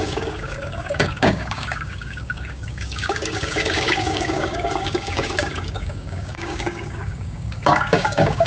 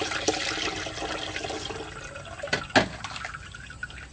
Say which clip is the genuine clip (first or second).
second